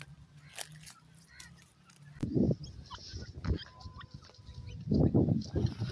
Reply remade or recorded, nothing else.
recorded